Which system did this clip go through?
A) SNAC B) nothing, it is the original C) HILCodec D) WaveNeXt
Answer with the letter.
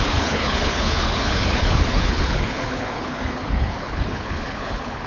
C